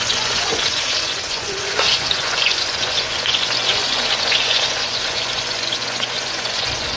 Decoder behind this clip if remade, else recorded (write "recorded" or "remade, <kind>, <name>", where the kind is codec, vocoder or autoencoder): remade, vocoder, Vocos